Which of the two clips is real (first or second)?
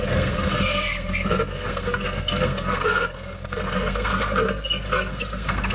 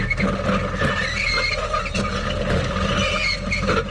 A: second